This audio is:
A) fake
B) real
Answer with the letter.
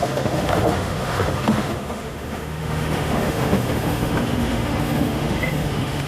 A